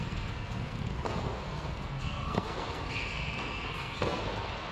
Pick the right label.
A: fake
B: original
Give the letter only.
A